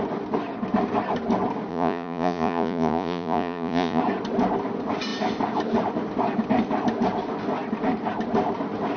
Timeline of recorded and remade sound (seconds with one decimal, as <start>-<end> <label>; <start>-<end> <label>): 0.0-1.7 recorded; 1.7-4.0 remade; 4.0-9.0 recorded